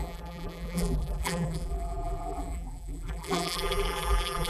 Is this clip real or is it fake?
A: fake